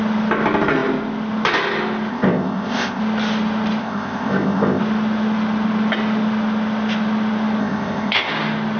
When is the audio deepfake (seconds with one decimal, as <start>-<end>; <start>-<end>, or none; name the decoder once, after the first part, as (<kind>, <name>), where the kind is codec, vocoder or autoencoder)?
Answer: 2.1-3.0 (codec, ZipCodec); 3.8-4.8; 7.6-8.3